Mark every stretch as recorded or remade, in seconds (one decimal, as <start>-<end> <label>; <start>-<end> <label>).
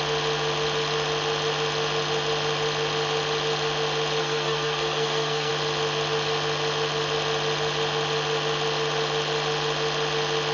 0.0-4.2 recorded; 4.2-5.5 remade; 5.5-10.5 recorded